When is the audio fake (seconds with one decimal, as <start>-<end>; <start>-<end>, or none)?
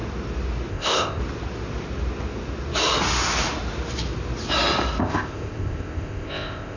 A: 0.7-1.2; 5.0-6.8